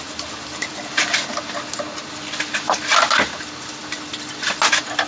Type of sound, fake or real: real